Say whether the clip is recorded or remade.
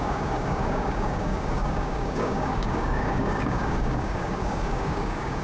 remade